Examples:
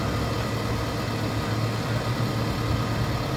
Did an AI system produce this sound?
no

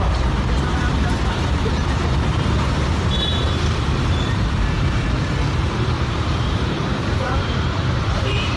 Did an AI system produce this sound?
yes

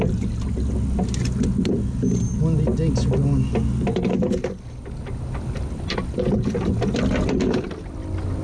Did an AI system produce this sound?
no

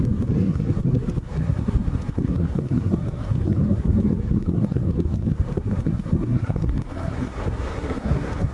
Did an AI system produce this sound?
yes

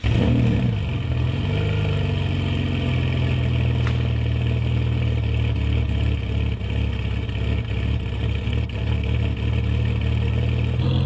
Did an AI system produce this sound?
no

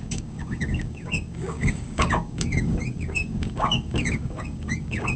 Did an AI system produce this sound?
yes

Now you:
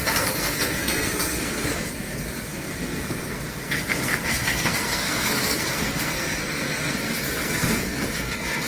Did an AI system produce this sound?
yes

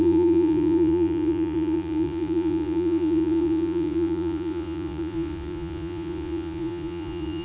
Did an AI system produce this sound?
yes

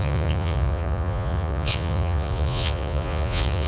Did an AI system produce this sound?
yes